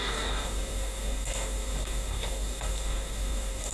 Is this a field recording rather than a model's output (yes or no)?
no